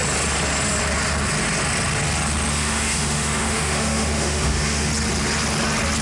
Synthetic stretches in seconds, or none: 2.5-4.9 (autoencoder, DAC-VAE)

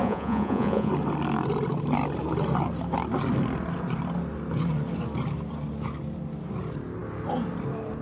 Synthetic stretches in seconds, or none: 0.0-0.9 (vocoder, Vocos)